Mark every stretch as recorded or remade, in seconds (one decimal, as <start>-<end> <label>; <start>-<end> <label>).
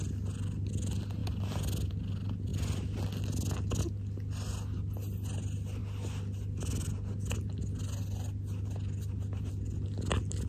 0.0-10.5 recorded